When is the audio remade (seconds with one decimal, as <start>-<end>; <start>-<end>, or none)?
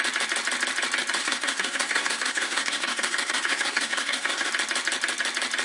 1.2-4.5